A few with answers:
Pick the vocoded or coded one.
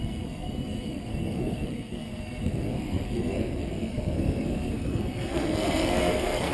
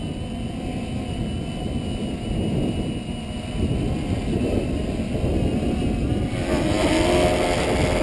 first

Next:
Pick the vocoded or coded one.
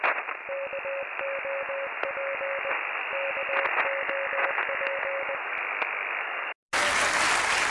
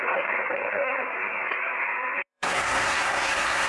second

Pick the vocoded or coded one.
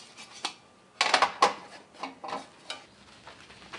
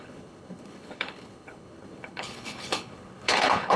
second